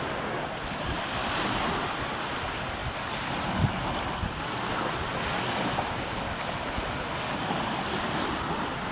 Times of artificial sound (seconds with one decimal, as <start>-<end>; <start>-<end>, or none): none